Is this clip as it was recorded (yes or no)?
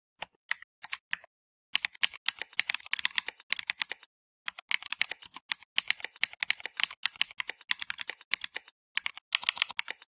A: yes